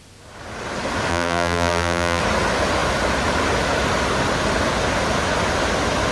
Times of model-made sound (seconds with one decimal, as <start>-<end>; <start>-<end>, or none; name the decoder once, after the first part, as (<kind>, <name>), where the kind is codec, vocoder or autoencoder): 1.1-2.2 (vocoder, BigVGAN v2)